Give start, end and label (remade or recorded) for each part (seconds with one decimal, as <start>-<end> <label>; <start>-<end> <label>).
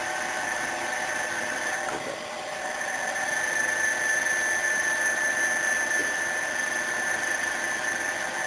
0.0-2.4 remade; 2.4-4.6 recorded; 4.6-5.3 remade; 5.3-6.0 recorded; 6.0-8.1 remade; 8.1-8.5 recorded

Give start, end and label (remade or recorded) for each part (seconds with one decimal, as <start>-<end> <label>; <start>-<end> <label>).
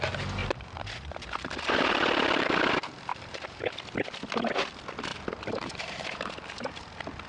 0.0-0.4 recorded; 0.4-2.6 remade; 2.6-3.1 recorded; 3.1-3.8 remade; 3.8-5.1 recorded; 5.1-6.7 remade; 6.7-7.3 recorded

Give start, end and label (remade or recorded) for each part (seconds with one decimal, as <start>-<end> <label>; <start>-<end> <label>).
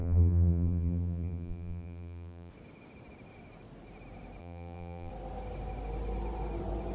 0.0-2.5 remade; 2.5-4.4 recorded; 4.4-5.1 remade; 5.1-6.9 recorded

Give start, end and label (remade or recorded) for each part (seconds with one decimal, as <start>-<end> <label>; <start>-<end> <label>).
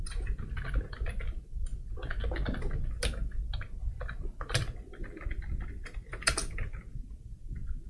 0.0-7.9 recorded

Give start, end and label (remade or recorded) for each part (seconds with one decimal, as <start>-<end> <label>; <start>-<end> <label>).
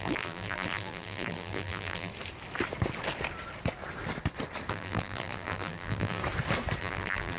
0.0-2.1 remade; 2.1-4.7 recorded; 4.7-6.2 remade; 6.2-6.8 recorded; 6.8-7.4 remade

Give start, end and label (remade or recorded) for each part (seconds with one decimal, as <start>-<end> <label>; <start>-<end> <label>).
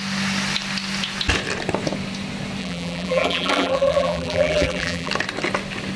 0.0-2.6 recorded; 2.6-5.1 remade; 5.1-6.0 recorded